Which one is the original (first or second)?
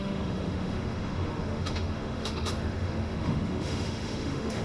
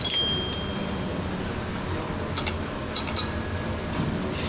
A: second